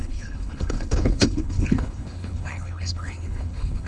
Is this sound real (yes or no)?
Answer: no